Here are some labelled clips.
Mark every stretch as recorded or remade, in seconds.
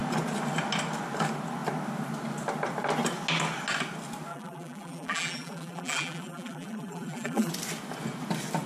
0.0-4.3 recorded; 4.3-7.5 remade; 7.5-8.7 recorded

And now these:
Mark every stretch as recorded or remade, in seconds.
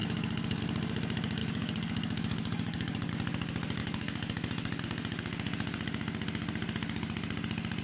0.0-0.6 remade; 0.6-1.4 recorded; 1.4-3.1 remade; 3.1-3.8 recorded; 3.8-4.8 remade; 4.8-7.8 recorded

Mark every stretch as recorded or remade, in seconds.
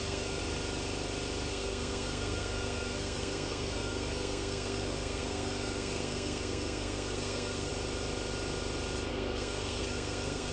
0.0-0.4 remade; 0.4-1.5 recorded; 1.5-7.7 remade; 7.7-9.1 recorded; 9.1-10.5 remade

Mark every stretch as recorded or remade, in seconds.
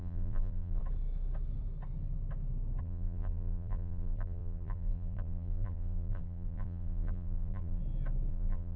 0.0-0.8 remade; 0.8-2.8 recorded; 2.8-7.8 remade; 7.8-8.3 recorded; 8.3-8.8 remade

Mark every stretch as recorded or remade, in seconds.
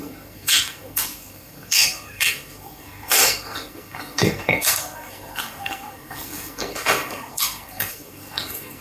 0.0-8.8 remade